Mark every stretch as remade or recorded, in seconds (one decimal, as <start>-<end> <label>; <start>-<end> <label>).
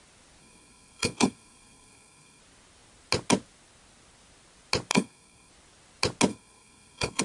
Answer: 0.0-0.4 recorded; 0.4-2.4 remade; 2.4-4.9 recorded; 4.9-5.5 remade; 5.5-6.3 recorded; 6.3-7.2 remade